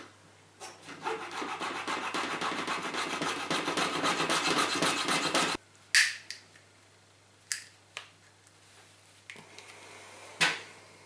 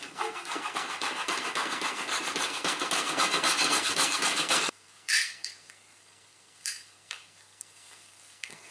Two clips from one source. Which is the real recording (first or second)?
first